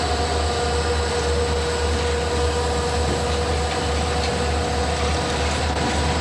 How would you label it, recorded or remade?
recorded